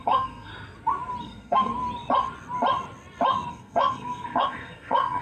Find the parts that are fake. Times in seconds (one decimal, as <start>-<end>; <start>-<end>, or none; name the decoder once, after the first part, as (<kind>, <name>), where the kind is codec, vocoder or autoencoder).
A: 0.0-0.5 (codec, SNAC); 1.2-1.7; 3.5-5.2